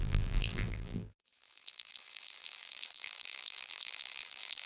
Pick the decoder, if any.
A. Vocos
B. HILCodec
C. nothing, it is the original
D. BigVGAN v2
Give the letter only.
D